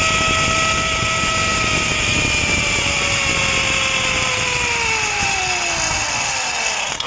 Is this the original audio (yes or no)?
yes